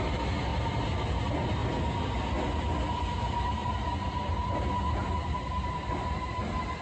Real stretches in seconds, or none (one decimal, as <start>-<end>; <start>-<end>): 0.0-6.8